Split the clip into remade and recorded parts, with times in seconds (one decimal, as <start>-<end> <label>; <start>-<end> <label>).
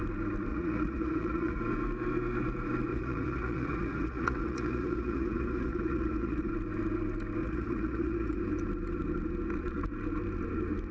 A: 0.0-0.5 recorded; 0.5-1.6 remade; 1.6-2.9 recorded; 2.9-6.5 remade; 6.5-7.4 recorded; 7.4-8.4 remade; 8.4-10.9 recorded